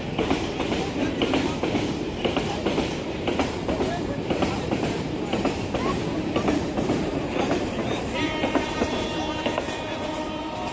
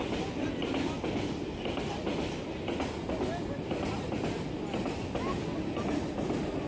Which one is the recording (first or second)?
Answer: second